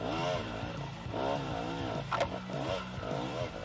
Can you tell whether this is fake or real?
real